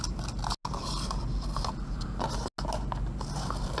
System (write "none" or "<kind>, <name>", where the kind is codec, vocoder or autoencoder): none